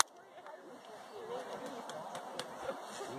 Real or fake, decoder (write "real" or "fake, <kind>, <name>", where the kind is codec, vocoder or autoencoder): real